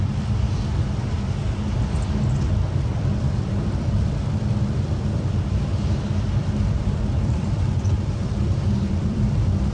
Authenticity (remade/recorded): remade